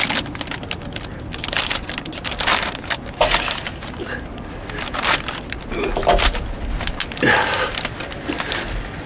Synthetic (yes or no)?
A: no